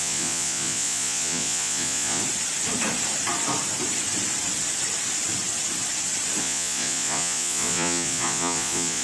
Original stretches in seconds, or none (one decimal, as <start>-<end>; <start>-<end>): 2.2-6.4